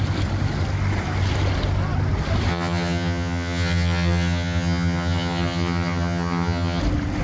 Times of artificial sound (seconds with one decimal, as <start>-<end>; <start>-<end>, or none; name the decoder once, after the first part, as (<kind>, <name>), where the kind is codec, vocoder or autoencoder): 2.5-6.8 (vocoder, HiFi-GAN)